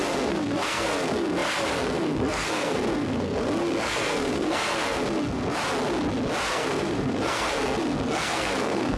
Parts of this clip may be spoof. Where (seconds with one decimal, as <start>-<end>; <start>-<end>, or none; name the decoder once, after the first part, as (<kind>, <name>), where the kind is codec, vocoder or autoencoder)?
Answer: 0.0-5.6 (codec, SNAC); 6.5-9.0